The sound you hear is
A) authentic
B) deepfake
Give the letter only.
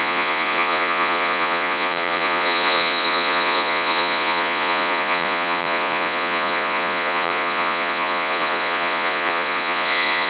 B